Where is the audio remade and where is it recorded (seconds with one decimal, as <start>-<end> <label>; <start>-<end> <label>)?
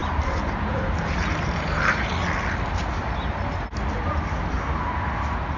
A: 0.0-2.1 remade; 2.1-5.6 recorded